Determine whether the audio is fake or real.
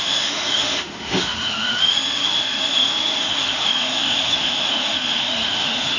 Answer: fake